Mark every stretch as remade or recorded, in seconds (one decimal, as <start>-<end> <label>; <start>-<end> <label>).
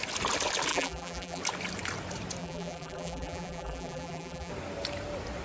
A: 0.0-0.7 recorded; 0.7-1.4 remade; 1.4-2.4 recorded; 2.4-4.5 remade; 4.5-5.4 recorded